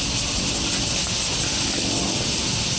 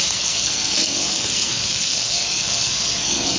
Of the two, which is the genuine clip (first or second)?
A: first